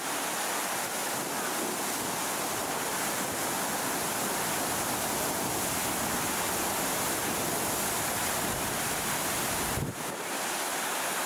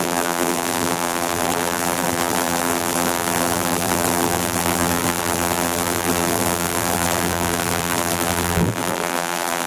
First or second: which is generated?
second